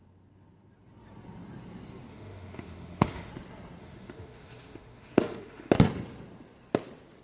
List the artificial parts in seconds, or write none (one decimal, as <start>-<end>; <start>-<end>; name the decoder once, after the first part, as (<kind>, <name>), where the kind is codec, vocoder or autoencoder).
2.1-3.3 (autoencoder, DAC-VAE); 3.8-5.7